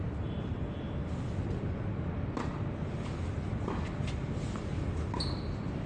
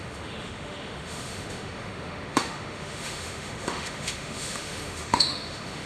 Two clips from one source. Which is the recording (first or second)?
first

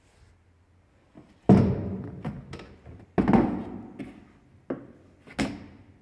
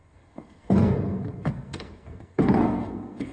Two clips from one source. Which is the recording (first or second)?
first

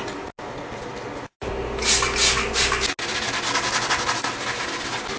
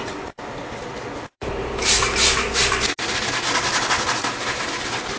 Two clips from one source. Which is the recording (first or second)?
first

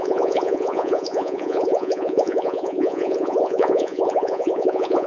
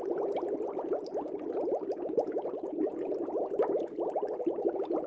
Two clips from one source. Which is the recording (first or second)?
second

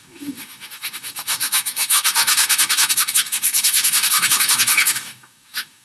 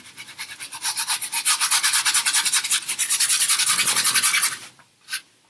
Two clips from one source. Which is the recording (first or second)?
second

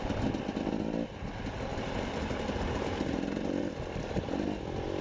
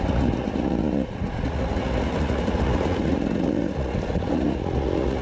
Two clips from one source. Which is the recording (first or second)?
first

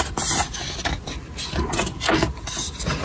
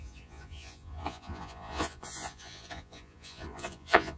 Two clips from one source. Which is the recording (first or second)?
first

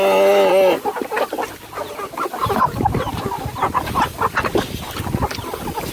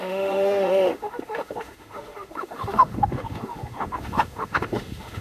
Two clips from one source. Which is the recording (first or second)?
first